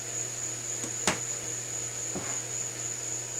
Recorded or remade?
recorded